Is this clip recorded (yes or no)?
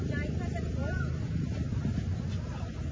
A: yes